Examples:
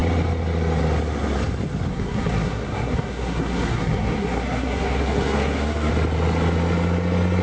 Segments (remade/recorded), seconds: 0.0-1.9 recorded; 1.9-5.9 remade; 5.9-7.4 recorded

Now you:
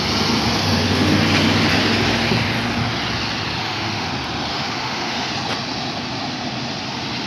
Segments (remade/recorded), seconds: 0.0-0.6 recorded; 0.6-1.2 remade; 1.2-3.6 recorded; 3.6-4.1 remade; 4.1-4.5 recorded; 4.5-5.3 remade; 5.3-7.3 recorded

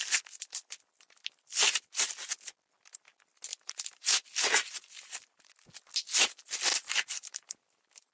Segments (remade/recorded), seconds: 0.0-3.5 recorded; 3.5-5.4 remade; 5.4-6.7 recorded; 6.7-7.6 remade; 7.6-8.1 recorded